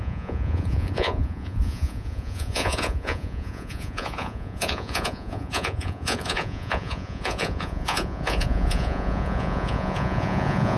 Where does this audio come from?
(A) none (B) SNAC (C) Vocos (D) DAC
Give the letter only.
C